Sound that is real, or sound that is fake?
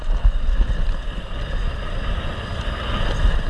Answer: real